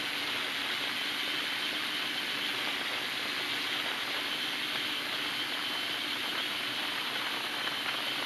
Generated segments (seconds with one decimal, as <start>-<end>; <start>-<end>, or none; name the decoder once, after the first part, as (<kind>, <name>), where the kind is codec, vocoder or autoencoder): 6.1-7.2 (vocoder, BigVGAN v2)